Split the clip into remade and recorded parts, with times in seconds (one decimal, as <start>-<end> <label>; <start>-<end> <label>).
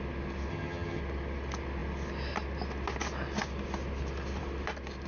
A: 0.0-0.5 recorded; 0.5-1.0 remade; 1.0-5.1 recorded